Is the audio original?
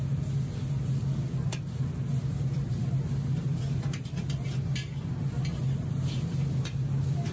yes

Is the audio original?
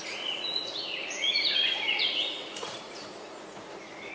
no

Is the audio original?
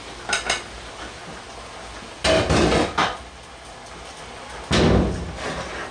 yes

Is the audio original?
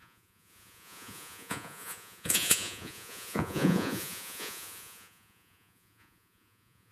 no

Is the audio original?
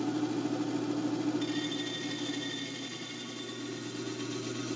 yes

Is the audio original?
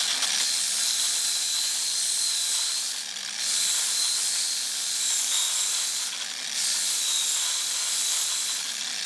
yes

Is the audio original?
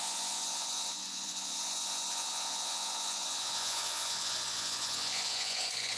no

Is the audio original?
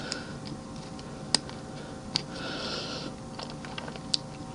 yes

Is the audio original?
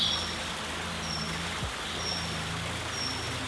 yes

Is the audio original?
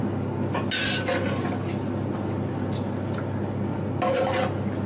yes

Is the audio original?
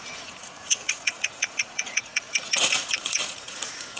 no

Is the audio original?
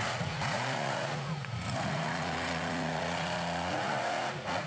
no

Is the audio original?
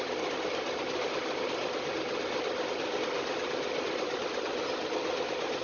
yes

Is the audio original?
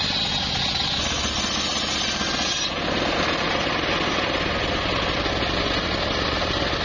yes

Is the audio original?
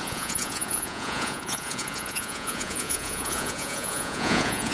no